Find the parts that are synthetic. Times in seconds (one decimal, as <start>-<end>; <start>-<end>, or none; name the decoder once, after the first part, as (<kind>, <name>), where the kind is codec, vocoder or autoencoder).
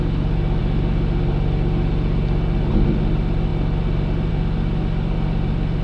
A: none